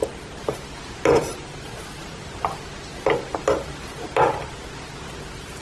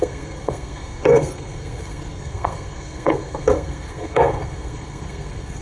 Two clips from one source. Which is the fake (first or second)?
second